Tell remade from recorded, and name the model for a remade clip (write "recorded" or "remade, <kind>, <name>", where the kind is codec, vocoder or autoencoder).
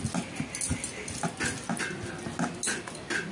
recorded